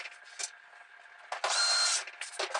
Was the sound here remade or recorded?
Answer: recorded